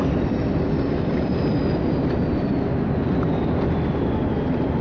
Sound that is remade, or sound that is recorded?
recorded